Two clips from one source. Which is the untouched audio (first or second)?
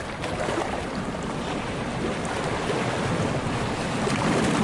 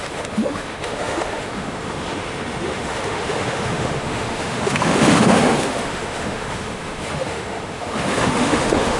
first